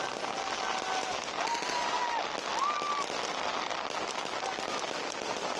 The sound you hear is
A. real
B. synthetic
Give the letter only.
A